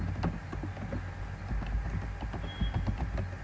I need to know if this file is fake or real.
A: real